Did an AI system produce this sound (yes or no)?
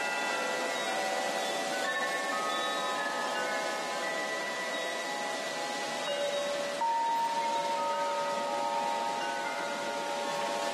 no